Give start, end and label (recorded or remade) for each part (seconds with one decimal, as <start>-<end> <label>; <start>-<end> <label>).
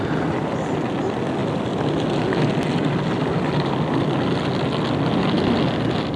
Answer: 0.0-6.2 recorded